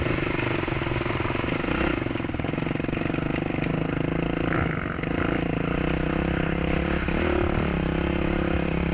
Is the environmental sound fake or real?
real